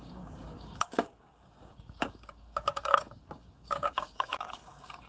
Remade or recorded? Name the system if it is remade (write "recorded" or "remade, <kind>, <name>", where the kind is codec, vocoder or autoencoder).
remade, codec, DAC